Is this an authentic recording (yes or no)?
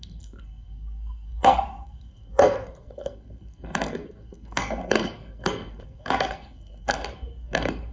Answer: no